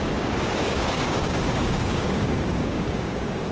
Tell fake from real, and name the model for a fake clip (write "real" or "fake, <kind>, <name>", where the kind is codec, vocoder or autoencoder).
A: fake, codec, DAC